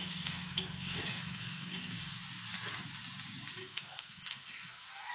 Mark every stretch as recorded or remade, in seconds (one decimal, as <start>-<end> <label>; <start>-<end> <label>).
0.0-2.2 remade; 2.2-3.6 recorded; 3.6-5.1 remade